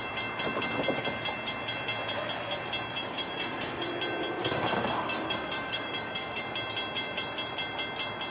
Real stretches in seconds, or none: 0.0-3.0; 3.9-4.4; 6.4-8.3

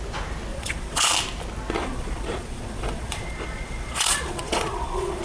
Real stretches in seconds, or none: 0.0-0.5; 1.1-1.8

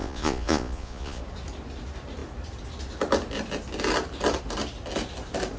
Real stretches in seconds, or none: 1.2-5.6

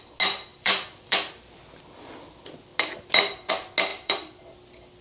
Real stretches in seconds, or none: 0.0-0.5; 1.6-3.9; 4.4-5.0

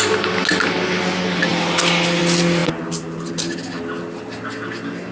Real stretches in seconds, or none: 0.0-5.1

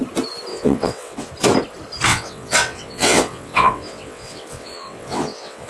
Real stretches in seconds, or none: 0.0-0.5; 1.3-2.1

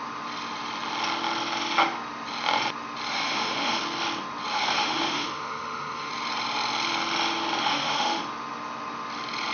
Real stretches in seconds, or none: 0.0-3.1; 3.8-4.5; 6.1-7.6; 8.2-9.5